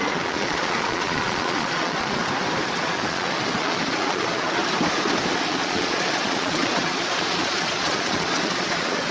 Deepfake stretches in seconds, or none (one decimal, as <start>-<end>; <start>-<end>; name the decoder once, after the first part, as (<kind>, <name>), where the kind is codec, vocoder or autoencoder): 0.0-2.2 (vocoder, Vocos); 2.8-4.6; 5.3-9.1